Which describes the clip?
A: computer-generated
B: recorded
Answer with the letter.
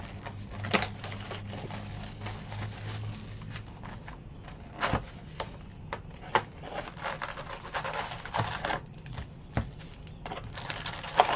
B